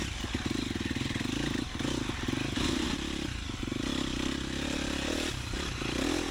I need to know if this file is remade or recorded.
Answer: recorded